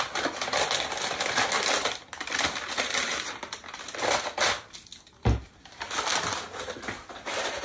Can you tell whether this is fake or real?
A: real